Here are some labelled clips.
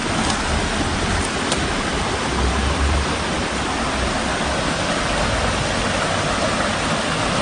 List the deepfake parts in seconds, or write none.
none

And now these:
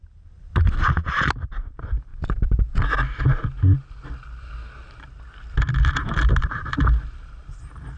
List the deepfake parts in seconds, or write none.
0.0-2.1; 5.9-8.0

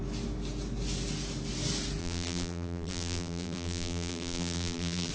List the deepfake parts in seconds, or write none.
2.0-5.1

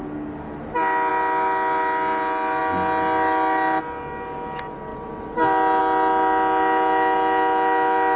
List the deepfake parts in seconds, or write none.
none

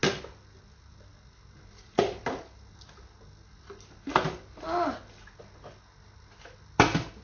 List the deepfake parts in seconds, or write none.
none

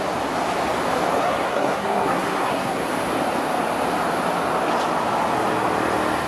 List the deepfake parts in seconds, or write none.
1.2-2.9

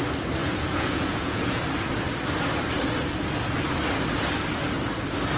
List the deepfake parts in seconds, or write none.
0.4-1.6

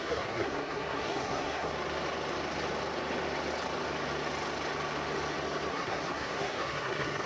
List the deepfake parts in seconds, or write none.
0.0-1.7; 5.7-7.3